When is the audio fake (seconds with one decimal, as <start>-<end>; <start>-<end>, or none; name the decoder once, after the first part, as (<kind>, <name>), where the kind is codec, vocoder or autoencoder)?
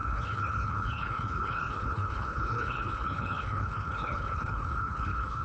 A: 0.0-5.4 (codec, HILCodec)